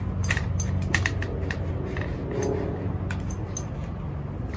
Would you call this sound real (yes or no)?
yes